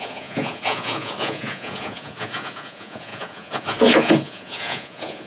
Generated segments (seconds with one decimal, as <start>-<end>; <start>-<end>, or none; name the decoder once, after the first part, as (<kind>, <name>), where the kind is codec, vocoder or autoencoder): 0.0-5.3 (vocoder, Vocos)